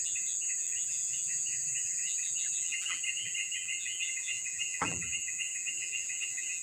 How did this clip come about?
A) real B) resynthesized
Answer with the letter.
B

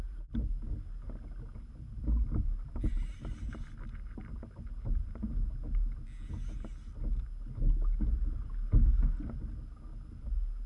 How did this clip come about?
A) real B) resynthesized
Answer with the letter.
A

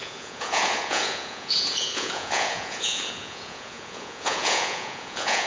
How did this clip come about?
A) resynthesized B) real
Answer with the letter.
A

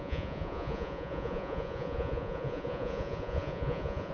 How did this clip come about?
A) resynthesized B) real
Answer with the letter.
A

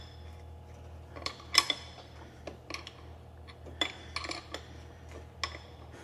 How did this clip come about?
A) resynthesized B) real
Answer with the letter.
B